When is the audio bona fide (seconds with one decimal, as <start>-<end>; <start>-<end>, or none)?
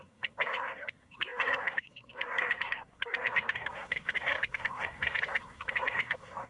none